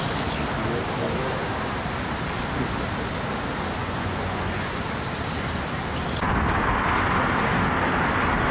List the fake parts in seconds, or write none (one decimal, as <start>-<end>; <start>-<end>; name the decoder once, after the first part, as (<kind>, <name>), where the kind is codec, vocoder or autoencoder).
3.8-4.8 (vocoder, Vocos)